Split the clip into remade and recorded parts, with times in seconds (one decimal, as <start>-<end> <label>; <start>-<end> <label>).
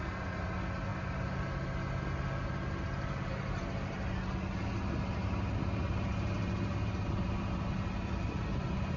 0.0-9.0 recorded